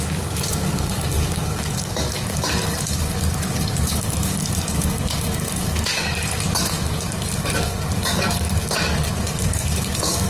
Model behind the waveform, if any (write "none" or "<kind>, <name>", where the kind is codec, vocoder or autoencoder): codec, DAC